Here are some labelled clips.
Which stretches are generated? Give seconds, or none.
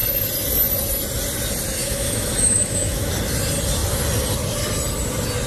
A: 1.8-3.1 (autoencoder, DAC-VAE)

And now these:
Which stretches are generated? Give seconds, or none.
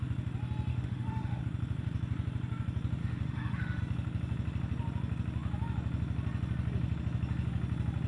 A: 0.7-1.4 (autoencoder, DAC-VAE); 3.0-3.8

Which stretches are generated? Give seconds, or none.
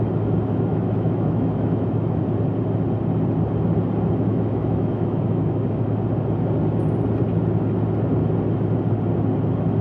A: 0.7-2.2 (autoencoder, DAC-VAE); 4.3-6.0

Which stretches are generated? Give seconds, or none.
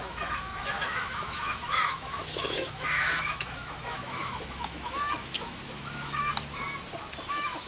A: 0.0-6.3 (autoencoder, DAC-VAE); 7.3-7.7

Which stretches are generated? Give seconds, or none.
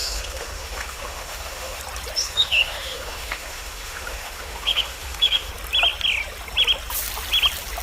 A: 0.0-1.8 (autoencoder, DAC-VAE); 2.2-5.5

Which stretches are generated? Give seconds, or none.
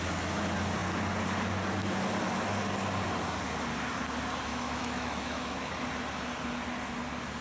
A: 4.5-5.7 (autoencoder, DAC-VAE)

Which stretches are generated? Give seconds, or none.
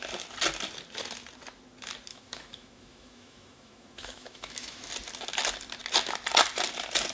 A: 2.1-4.9 (autoencoder, DAC-VAE)